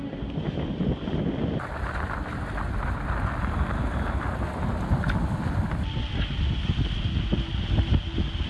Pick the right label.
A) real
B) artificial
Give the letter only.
A